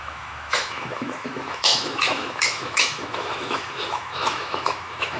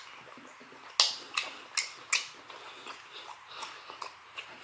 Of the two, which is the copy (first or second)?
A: first